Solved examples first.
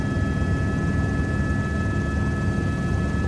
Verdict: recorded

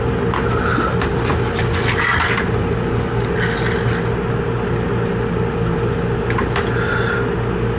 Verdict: recorded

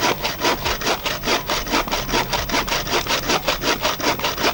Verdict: recorded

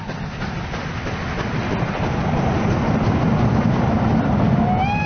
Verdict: recorded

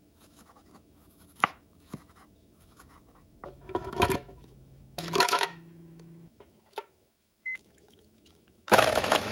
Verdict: remade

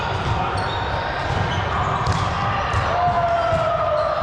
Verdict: recorded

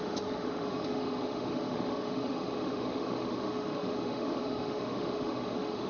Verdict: remade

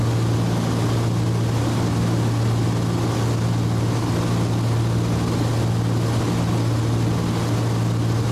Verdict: recorded